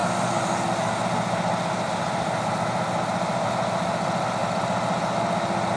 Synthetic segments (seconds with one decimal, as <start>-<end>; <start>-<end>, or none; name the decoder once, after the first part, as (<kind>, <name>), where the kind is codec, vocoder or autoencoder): none